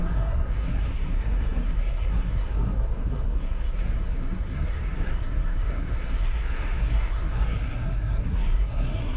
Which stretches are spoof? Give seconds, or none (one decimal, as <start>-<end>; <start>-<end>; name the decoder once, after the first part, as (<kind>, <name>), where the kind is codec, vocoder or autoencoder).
0.0-9.2 (codec, SNAC)